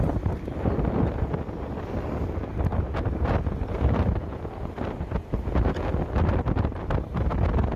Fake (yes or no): no